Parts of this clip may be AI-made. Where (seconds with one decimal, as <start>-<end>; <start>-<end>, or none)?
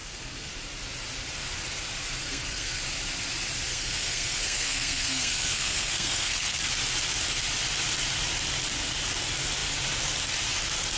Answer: 0.0-0.5; 2.2-2.8; 3.7-6.6